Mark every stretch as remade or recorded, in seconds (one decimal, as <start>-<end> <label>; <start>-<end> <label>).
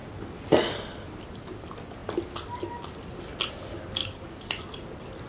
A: 0.0-4.0 recorded; 4.0-4.5 remade; 4.5-5.3 recorded